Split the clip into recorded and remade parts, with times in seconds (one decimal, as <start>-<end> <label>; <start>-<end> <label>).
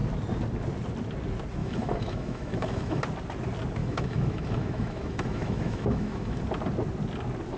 0.0-1.6 recorded; 1.6-3.0 remade; 3.0-3.8 recorded; 3.8-6.4 remade; 6.4-7.6 recorded